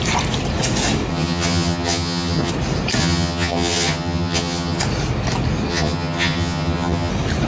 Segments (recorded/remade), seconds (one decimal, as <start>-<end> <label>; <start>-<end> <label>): 0.0-1.1 recorded; 1.1-2.5 remade; 2.5-3.0 recorded; 3.0-4.8 remade; 4.8-5.7 recorded; 5.7-7.1 remade; 7.1-7.5 recorded